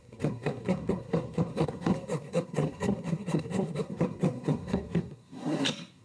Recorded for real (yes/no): no